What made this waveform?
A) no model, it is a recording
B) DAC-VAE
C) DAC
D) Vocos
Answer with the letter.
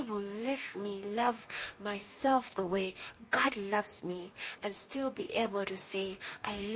C